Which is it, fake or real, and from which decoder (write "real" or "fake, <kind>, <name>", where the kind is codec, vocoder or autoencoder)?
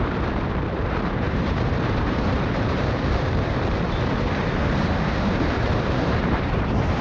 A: fake, vocoder, BigVGAN v2